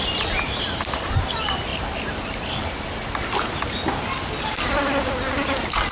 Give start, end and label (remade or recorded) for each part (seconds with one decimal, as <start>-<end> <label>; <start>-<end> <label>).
0.0-5.9 recorded